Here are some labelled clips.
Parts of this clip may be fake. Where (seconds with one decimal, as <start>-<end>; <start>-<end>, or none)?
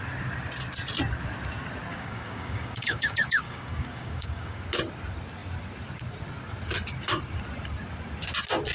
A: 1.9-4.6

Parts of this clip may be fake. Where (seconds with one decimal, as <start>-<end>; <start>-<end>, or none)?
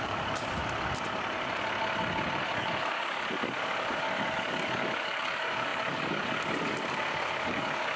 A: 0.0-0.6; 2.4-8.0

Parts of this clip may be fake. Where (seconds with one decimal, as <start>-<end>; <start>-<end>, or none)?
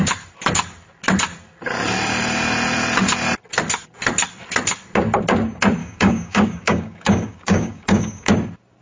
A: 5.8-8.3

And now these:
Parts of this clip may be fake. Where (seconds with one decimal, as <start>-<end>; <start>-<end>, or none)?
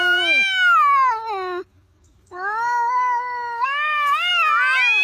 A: 1.7-4.3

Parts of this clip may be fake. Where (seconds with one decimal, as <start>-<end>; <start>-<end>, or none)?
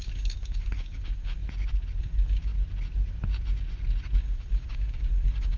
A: 0.0-1.4; 2.0-2.5; 4.2-5.6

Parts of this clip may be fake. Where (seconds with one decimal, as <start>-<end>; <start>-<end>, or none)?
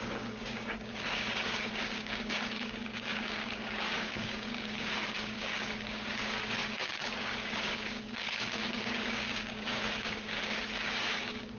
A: 0.0-11.6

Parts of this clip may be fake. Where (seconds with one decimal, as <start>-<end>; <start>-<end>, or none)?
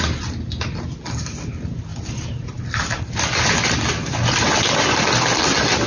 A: none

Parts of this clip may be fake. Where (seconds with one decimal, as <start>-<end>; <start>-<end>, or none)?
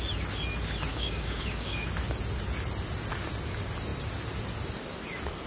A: 0.9-1.9